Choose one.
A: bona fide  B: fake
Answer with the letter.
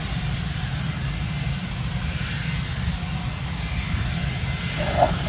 A